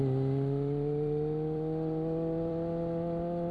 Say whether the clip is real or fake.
fake